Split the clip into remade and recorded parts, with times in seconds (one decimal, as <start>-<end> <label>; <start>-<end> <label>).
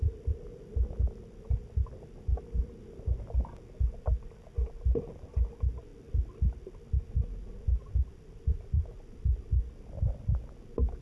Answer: 0.0-11.0 recorded